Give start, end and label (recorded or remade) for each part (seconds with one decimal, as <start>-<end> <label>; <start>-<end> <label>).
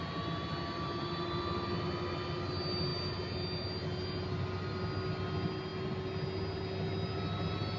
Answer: 0.0-7.8 recorded